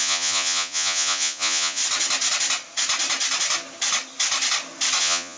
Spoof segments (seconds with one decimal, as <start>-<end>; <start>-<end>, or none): 0.0-1.8; 5.0-5.4